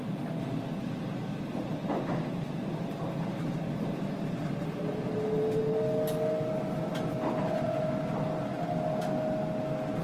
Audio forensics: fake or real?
real